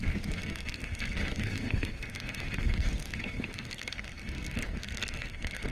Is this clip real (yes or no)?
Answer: no